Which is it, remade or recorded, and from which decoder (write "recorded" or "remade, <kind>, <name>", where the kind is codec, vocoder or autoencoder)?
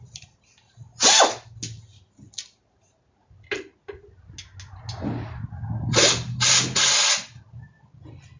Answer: recorded